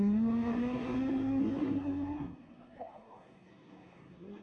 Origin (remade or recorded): remade